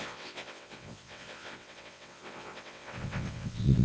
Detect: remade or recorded remade